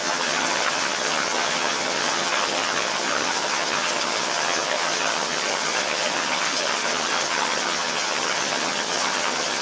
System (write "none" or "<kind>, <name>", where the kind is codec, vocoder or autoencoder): vocoder, HiFi-GAN